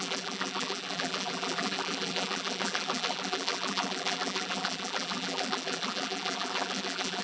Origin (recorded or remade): remade